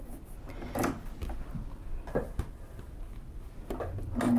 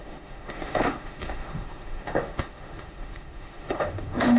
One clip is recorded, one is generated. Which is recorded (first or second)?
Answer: first